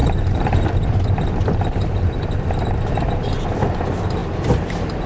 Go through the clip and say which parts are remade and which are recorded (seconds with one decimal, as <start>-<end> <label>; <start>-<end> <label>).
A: 0.0-3.1 remade; 3.1-5.1 recorded